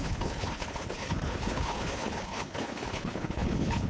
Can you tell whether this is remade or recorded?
remade